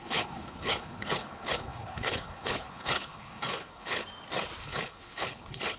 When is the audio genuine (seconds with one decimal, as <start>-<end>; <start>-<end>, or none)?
4.0-4.6